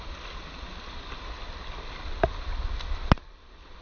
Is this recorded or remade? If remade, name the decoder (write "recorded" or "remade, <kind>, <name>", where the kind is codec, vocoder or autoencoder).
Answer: recorded